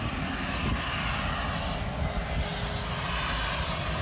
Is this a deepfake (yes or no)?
no